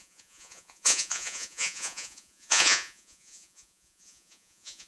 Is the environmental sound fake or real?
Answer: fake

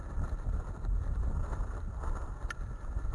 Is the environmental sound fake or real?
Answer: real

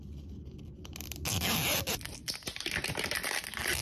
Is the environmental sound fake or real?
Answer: real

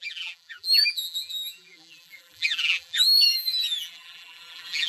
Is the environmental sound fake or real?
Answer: fake